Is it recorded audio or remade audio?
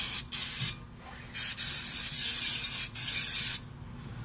recorded